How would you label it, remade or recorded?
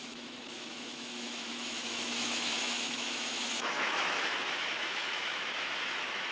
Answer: remade